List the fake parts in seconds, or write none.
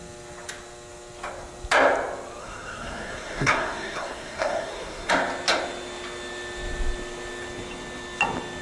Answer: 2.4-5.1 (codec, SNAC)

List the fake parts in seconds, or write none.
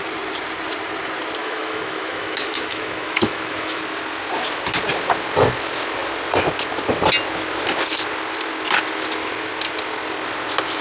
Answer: 1.4-3.8 (autoencoder, DAC-VAE)